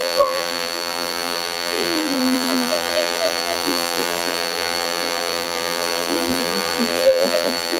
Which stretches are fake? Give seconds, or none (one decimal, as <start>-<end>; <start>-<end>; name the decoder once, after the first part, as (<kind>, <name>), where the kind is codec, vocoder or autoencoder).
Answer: 0.0-7.8 (vocoder, BigVGAN v2)